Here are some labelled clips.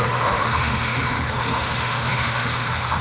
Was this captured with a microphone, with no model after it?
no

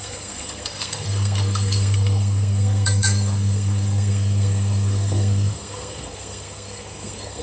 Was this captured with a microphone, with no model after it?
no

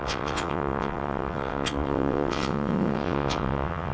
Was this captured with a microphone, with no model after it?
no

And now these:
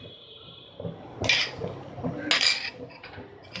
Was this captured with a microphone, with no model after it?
yes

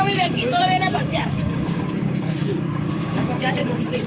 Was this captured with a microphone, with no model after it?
no